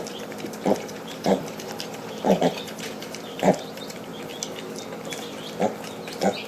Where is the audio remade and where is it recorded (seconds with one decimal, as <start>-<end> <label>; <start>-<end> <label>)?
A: 0.0-4.1 remade; 4.1-6.5 recorded